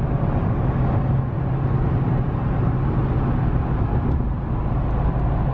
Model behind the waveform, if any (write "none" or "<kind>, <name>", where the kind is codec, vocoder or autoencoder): none